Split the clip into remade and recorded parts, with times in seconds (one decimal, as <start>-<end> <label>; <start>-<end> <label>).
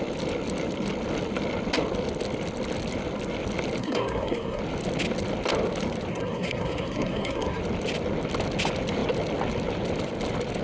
0.0-3.8 recorded; 3.8-4.6 remade; 4.6-6.1 recorded; 6.1-7.6 remade; 7.6-10.6 recorded